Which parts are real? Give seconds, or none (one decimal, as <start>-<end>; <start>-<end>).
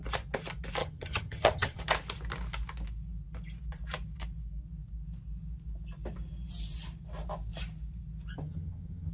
0.0-0.8; 1.8-8.4